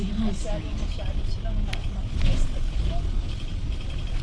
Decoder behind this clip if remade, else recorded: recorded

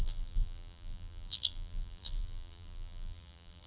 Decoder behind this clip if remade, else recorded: remade, vocoder, BigVGAN v2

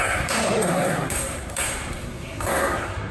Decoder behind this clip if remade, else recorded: remade, codec, SNAC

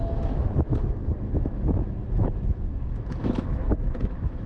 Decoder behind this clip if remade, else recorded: remade, autoencoder, DAC-VAE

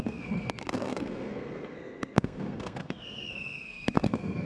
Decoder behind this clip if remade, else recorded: remade, codec, SNAC